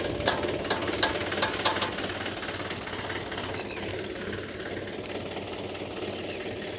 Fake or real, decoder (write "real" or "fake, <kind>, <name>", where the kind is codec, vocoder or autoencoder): real